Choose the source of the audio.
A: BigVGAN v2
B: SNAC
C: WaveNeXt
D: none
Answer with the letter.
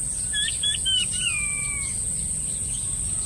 D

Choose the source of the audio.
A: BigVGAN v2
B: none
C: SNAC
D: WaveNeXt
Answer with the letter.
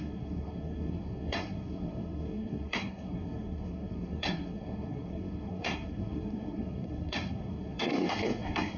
C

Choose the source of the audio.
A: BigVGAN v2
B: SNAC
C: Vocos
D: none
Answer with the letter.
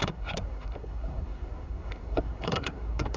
B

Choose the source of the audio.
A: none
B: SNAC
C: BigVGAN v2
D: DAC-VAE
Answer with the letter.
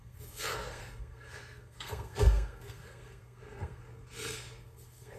B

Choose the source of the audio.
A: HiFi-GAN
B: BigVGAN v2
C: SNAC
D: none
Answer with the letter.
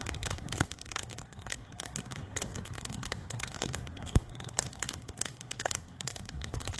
C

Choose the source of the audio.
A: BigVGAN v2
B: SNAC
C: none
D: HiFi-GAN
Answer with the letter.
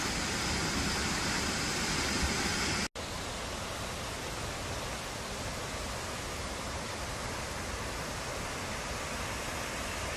C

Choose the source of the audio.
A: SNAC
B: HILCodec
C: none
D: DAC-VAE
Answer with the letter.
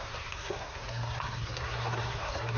A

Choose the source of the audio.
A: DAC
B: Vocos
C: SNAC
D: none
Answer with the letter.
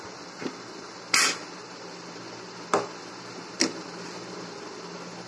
D